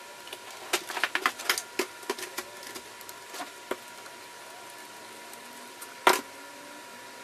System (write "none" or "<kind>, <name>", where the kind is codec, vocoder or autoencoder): none